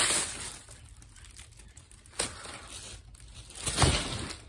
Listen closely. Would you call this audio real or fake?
real